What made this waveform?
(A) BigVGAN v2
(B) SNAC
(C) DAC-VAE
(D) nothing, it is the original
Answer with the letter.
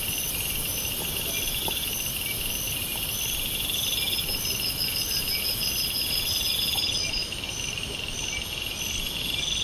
D